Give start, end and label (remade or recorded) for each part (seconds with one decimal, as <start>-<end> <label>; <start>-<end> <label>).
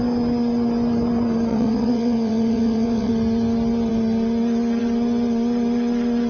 0.0-1.5 recorded; 1.5-3.1 remade; 3.1-6.3 recorded